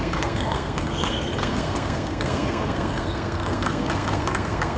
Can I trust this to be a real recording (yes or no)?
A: no